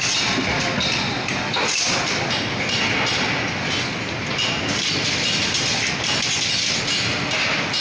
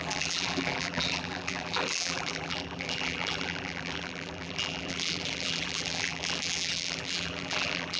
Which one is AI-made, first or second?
second